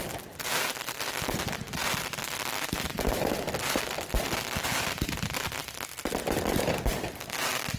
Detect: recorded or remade recorded